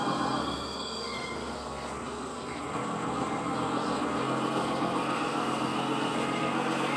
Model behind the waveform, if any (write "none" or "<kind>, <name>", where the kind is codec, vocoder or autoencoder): codec, SNAC